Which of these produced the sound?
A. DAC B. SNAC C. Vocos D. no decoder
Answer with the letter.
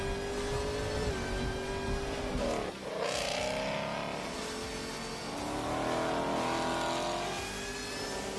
D